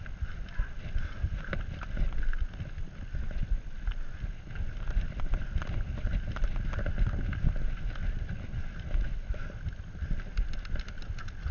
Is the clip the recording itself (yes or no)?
yes